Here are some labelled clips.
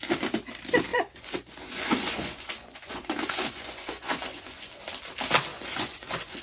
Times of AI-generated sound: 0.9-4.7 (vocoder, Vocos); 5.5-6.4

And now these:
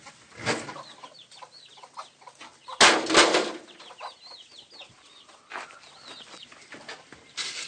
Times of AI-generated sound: none

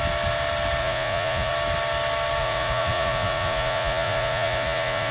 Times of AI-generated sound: 0.8-1.5 (vocoder, Vocos); 2.4-5.1

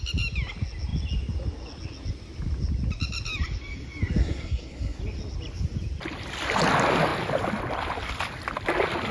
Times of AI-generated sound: 4.2-5.0 (codec, SNAC)